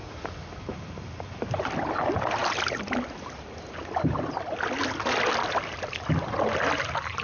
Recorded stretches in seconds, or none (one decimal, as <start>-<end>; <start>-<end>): 0.0-7.2

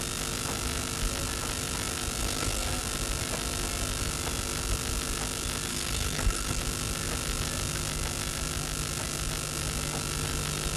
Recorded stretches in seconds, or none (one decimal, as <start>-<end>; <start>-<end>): 0.0-2.2; 2.8-5.7; 6.6-10.8

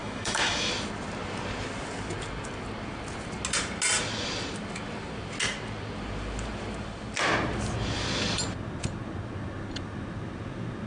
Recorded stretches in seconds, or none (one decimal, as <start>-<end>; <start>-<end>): 0.7-10.9

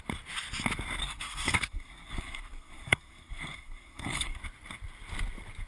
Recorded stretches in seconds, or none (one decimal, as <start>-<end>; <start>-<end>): 0.0-1.0; 4.4-5.7

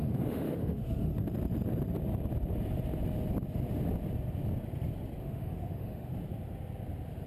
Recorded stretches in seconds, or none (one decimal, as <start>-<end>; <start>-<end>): 1.1-5.2; 6.1-7.3

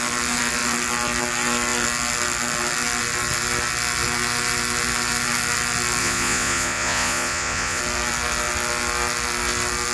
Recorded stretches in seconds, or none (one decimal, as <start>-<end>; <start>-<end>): 0.0-6.0; 7.8-9.9

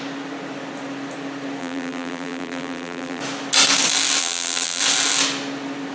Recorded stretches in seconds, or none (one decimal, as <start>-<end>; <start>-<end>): 0.0-1.6; 3.2-4.2; 4.8-5.9

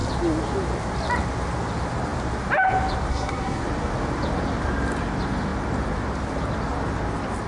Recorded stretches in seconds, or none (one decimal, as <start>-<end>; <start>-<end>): 0.0-3.1; 3.6-7.5